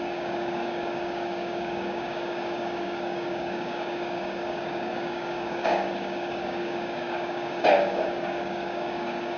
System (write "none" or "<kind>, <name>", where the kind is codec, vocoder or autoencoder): codec, DAC